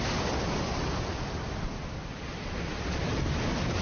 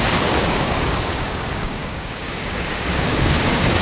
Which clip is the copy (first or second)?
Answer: second